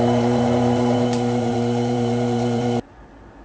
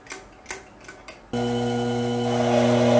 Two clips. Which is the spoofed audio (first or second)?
first